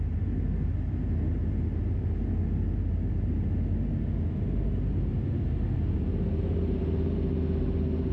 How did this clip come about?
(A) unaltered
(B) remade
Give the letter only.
A